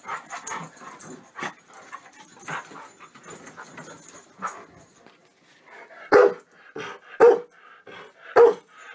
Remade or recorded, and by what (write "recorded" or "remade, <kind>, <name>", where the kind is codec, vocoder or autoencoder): recorded